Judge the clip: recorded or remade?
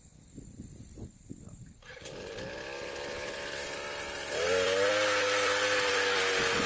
remade